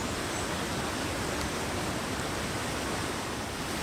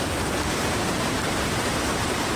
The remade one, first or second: second